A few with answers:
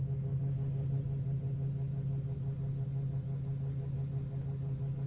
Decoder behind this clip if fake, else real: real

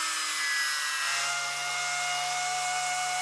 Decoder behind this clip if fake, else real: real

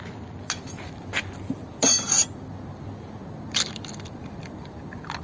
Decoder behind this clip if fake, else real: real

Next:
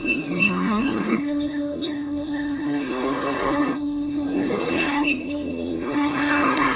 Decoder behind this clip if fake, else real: fake, codec, SNAC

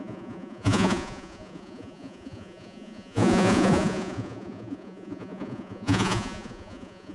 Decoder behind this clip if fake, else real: fake, vocoder, Vocos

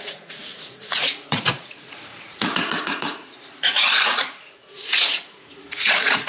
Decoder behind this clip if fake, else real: fake, vocoder, Vocos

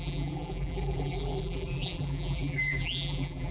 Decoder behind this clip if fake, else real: fake, vocoder, BigVGAN v2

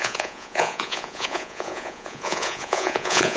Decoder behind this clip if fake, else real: fake, vocoder, Vocos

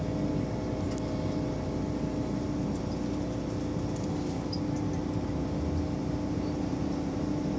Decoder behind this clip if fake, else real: real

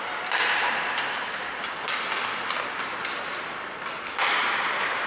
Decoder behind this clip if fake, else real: fake, vocoder, BigVGAN v2